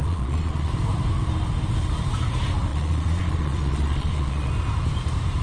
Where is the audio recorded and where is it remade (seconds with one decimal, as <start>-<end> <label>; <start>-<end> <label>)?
0.0-0.7 remade; 0.7-2.7 recorded; 2.7-4.5 remade; 4.5-5.4 recorded